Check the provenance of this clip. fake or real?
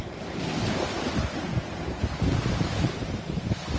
real